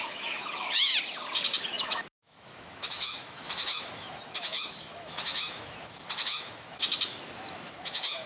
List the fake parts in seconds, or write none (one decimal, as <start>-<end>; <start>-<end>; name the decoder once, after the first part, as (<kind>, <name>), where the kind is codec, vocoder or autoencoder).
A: 0.0-0.9 (autoencoder, DAC-VAE); 1.6-8.3